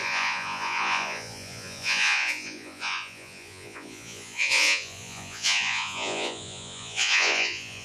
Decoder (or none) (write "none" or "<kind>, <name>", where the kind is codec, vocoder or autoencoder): vocoder, Vocos